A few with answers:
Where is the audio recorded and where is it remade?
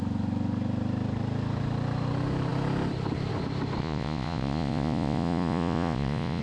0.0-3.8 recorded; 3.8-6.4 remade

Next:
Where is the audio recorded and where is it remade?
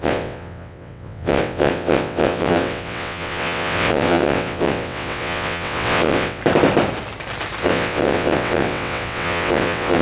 0.0-6.4 remade; 6.4-7.6 recorded; 7.6-10.0 remade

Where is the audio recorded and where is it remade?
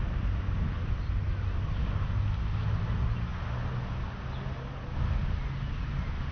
0.0-6.3 recorded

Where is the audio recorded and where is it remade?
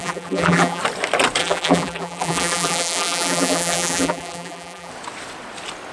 0.0-0.8 remade; 0.8-1.4 recorded; 1.4-4.9 remade; 4.9-5.9 recorded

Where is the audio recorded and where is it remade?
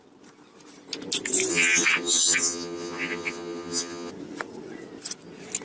0.0-1.5 recorded; 1.5-4.1 remade; 4.1-5.6 recorded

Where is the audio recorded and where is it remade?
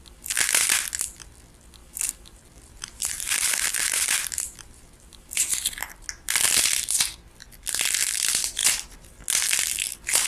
0.0-1.8 recorded; 1.8-6.1 remade; 6.1-10.3 recorded